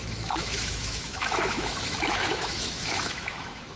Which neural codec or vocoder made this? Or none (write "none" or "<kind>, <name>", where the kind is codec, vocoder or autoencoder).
autoencoder, DAC-VAE